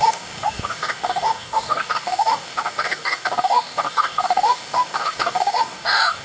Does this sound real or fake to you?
fake